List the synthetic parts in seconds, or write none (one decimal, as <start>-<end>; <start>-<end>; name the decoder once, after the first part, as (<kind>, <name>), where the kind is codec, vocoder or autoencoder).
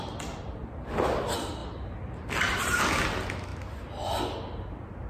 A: none